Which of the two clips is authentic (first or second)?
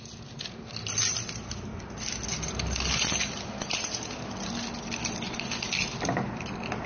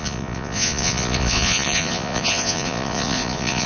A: first